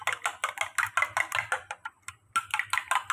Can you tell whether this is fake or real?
real